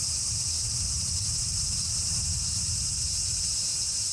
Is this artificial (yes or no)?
yes